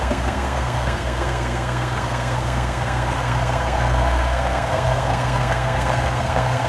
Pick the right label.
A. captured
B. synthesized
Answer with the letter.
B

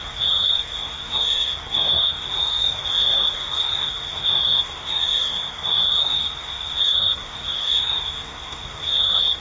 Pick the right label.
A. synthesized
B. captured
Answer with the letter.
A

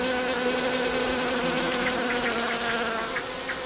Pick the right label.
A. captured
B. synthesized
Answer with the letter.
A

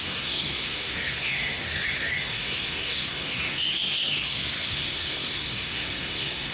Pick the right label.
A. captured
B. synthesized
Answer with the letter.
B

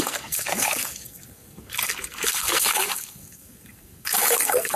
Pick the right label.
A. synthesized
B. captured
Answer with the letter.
A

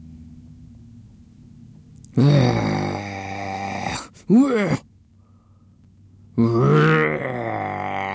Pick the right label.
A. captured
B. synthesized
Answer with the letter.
A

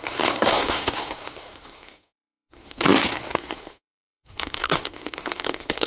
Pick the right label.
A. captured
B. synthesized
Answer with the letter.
B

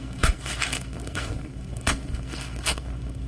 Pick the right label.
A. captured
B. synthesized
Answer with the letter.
B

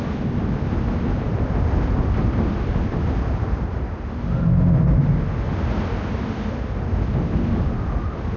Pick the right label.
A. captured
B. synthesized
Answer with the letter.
A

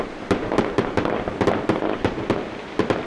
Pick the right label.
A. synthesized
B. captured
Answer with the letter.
B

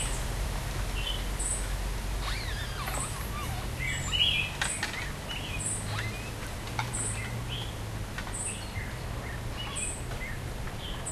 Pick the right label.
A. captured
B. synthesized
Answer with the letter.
A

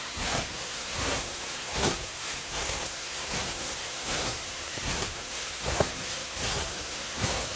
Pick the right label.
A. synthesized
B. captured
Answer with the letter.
A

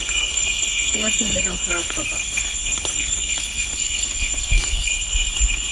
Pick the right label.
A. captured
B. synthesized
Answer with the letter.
B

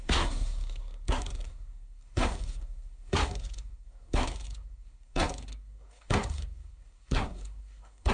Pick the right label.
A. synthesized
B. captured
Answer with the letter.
A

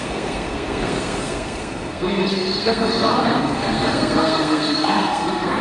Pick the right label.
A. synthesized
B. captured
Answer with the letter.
A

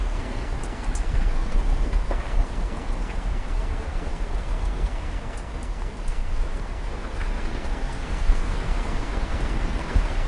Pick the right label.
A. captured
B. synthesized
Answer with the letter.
B